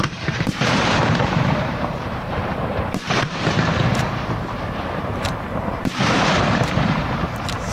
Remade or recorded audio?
remade